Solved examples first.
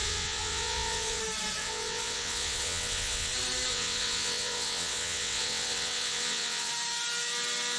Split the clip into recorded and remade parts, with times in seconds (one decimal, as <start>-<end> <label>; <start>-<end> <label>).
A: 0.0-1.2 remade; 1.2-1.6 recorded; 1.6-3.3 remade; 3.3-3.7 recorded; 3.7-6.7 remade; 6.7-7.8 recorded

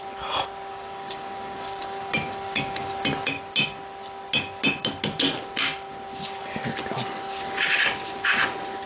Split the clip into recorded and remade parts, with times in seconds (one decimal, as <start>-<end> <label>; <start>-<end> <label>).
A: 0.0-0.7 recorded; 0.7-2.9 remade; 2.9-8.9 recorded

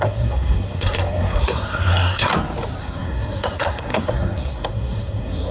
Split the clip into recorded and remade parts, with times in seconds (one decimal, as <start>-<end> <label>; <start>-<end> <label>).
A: 0.0-2.3 remade; 2.3-2.8 recorded; 2.8-5.5 remade